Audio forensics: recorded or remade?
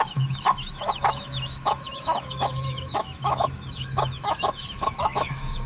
remade